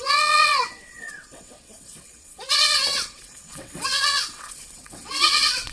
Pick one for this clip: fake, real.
fake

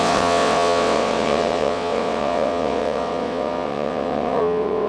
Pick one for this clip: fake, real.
fake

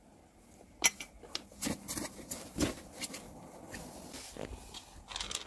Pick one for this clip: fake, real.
real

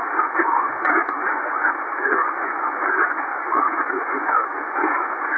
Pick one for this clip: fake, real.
fake